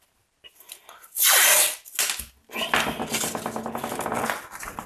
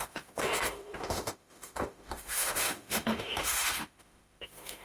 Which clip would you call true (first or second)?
first